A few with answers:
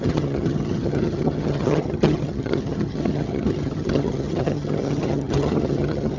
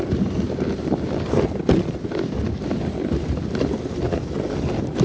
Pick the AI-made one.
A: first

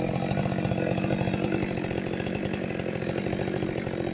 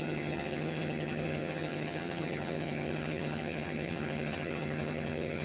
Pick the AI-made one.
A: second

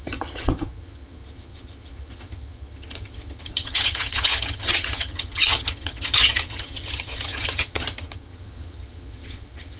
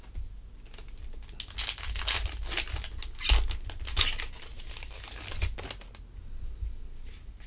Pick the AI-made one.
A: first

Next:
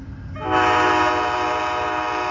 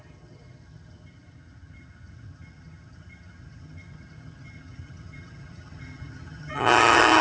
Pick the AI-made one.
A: second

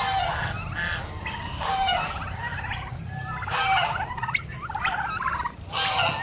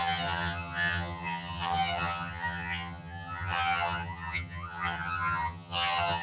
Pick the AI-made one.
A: second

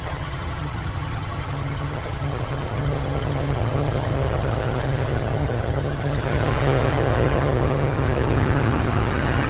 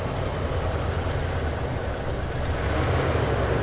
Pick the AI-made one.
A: first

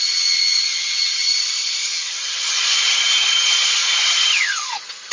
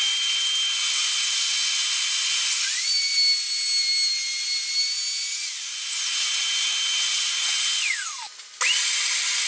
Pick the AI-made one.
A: first